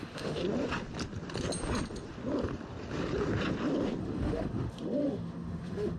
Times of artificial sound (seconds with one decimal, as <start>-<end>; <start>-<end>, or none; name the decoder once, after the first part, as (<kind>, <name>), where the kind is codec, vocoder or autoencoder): 0.0-0.4 (autoencoder, DAC-VAE); 4.0-6.0